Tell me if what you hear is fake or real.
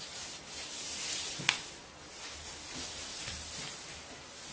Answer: real